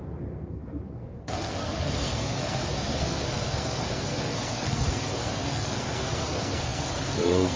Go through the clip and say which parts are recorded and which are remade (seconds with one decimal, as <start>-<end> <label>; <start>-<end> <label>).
0.0-7.6 remade

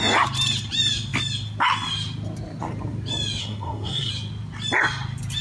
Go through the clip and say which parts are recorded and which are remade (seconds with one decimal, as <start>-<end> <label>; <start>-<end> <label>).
0.0-3.4 recorded; 3.4-4.1 remade; 4.1-5.4 recorded